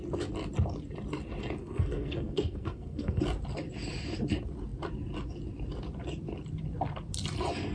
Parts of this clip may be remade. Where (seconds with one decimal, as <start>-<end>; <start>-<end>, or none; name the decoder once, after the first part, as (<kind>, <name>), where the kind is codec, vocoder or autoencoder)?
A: 1.6-3.2 (codec, SNAC)